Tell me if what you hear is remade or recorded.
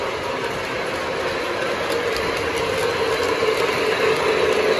recorded